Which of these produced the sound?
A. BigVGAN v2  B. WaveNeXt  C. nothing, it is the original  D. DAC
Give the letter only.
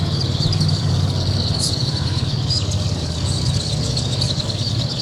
D